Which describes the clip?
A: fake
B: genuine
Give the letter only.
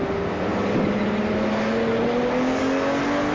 B